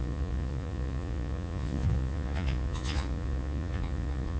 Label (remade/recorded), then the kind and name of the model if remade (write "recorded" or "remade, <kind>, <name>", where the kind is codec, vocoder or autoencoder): remade, vocoder, Vocos